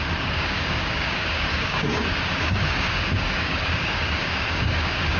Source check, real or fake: fake